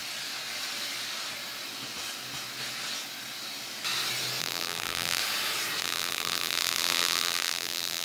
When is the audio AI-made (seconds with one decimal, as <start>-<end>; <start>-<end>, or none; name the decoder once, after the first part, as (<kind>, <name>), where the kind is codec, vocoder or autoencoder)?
4.4-5.2 (vocoder, BigVGAN v2); 5.8-8.0

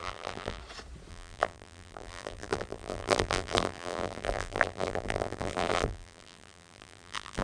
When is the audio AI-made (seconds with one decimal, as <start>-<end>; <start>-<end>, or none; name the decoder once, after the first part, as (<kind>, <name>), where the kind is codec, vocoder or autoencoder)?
0.0-0.6 (vocoder, BigVGAN v2); 1.1-7.4

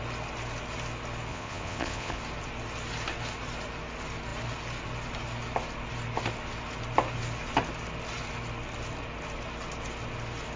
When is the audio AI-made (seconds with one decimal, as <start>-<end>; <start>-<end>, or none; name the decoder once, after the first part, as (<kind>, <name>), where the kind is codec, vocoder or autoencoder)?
1.3-2.2 (vocoder, Vocos)

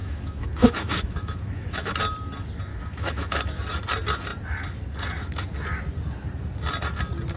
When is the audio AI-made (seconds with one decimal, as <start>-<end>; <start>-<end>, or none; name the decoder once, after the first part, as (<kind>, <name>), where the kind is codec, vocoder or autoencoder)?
0.0-1.9 (autoencoder, DAC-VAE); 2.7-3.5

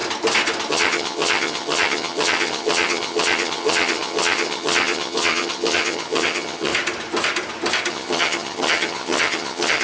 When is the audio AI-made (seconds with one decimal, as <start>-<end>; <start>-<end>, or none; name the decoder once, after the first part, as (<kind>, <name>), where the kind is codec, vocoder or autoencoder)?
0.7-6.7 (vocoder, HiFi-GAN); 7.9-9.8

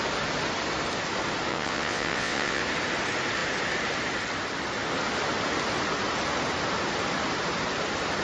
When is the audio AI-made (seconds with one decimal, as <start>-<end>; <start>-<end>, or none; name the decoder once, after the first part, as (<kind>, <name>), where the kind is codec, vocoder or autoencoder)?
1.5-2.6 (vocoder, WaveNeXt)

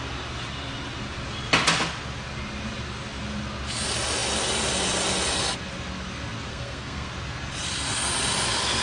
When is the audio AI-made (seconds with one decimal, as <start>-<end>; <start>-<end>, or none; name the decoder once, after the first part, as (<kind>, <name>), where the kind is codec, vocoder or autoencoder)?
6.5-7.1 (codec, SNAC)